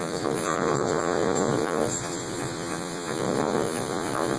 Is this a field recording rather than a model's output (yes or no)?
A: no